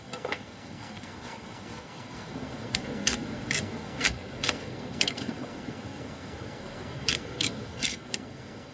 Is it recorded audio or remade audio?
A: remade